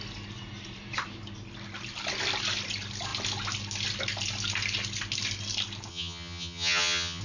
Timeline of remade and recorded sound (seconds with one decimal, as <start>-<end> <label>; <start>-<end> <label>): 0.0-5.9 recorded; 5.9-7.2 remade